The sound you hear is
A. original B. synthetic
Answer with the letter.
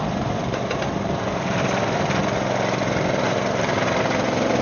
A